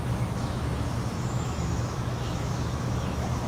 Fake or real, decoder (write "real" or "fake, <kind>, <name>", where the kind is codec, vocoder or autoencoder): fake, autoencoder, DAC-VAE